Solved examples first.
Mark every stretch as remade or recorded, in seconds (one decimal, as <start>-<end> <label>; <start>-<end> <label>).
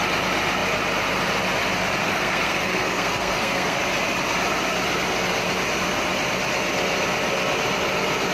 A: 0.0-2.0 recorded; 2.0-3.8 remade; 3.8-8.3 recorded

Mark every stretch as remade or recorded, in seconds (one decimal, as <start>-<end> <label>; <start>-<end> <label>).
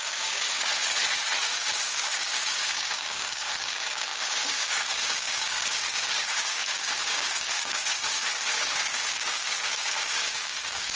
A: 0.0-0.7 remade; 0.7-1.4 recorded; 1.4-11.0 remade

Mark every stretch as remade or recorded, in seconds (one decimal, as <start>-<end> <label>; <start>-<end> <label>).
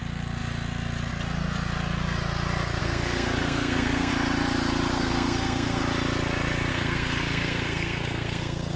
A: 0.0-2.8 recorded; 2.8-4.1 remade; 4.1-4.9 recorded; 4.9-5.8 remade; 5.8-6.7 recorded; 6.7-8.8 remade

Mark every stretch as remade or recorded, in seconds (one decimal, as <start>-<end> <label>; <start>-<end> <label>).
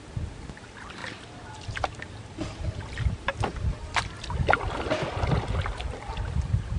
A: 0.0-6.8 recorded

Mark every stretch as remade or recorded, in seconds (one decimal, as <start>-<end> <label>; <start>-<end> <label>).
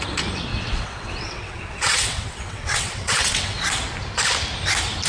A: 0.0-0.5 recorded; 0.5-3.6 remade; 3.6-5.1 recorded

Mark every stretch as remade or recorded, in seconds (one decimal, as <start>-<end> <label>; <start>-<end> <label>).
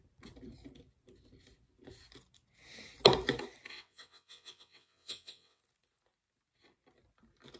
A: 0.0-3.7 recorded; 3.7-5.6 remade; 5.6-7.6 recorded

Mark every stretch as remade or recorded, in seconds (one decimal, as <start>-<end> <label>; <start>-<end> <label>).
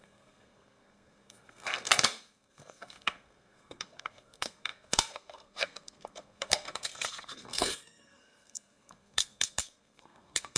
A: 0.0-10.6 remade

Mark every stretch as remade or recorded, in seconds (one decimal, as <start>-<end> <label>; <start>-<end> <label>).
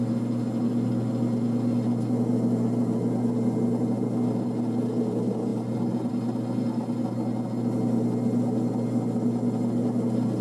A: 0.0-10.4 recorded